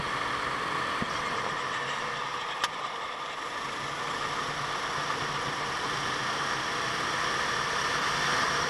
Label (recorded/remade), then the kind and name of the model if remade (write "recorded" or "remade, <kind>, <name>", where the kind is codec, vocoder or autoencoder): recorded